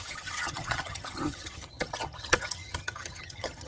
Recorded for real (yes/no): no